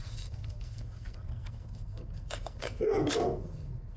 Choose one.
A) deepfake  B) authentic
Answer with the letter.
A